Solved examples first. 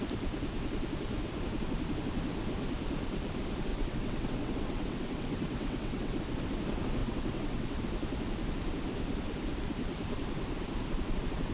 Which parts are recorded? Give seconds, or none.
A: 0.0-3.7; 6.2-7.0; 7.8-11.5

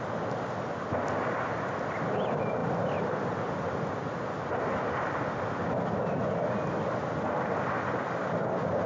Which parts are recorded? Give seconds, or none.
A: 0.0-8.9

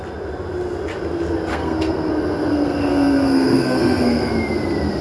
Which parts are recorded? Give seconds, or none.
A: 0.0-1.5; 2.1-2.5; 4.3-5.0

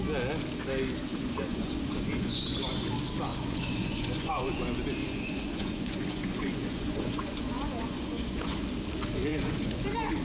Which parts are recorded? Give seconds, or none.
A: 0.0-1.1; 2.9-3.3; 4.6-5.0; 8.6-9.3